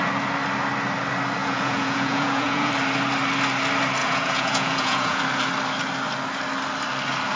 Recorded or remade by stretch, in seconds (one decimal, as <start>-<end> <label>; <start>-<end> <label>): 0.0-1.4 recorded; 1.4-2.7 remade; 2.7-4.0 recorded; 4.0-5.2 remade; 5.2-7.4 recorded